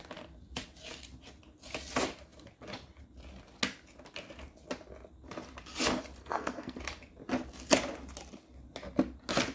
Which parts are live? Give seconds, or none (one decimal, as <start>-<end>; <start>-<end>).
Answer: 0.0-6.2; 6.8-9.5